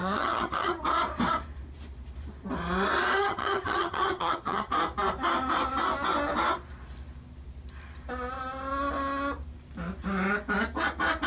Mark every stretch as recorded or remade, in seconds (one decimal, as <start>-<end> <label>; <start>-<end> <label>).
0.0-0.8 remade; 0.8-3.2 recorded; 3.2-4.7 remade; 4.7-11.3 recorded